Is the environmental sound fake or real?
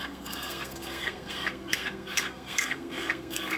fake